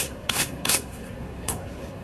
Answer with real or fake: fake